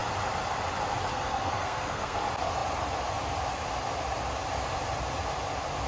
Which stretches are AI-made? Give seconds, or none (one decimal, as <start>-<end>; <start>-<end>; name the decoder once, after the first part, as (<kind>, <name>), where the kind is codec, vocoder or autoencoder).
1.1-2.2 (codec, SNAC)